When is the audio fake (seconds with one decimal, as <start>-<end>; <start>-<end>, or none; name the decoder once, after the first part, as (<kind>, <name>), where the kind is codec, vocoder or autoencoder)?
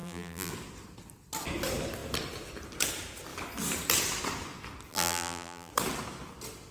0.0-0.5 (vocoder, BigVGAN v2); 4.9-5.7